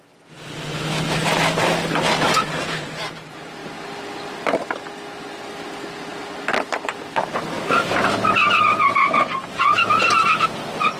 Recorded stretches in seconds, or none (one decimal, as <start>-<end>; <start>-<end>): 0.0-11.0